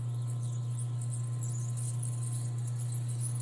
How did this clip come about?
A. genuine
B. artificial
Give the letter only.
A